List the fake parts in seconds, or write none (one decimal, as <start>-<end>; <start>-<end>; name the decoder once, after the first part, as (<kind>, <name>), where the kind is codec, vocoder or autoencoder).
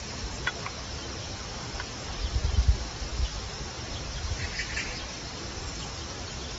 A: none